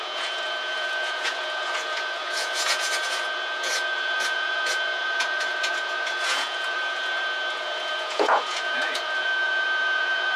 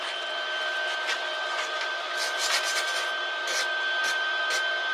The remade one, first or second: first